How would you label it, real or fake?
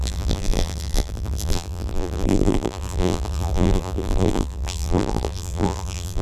fake